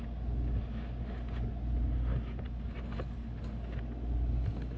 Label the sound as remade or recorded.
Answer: recorded